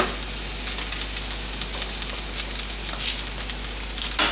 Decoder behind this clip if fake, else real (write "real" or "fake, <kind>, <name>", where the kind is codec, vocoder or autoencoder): real